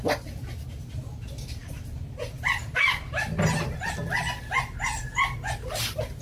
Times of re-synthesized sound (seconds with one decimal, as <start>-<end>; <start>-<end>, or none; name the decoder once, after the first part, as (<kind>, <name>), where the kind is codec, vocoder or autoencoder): none